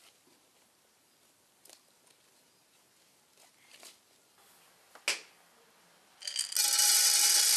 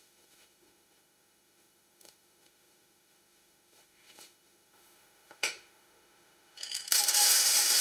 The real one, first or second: first